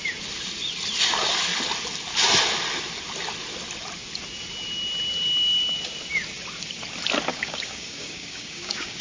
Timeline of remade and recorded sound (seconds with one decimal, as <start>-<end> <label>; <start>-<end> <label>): 0.0-7.3 recorded; 7.3-9.0 remade